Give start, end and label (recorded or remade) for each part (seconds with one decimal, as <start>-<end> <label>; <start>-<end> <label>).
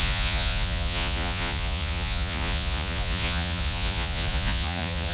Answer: 0.0-5.1 remade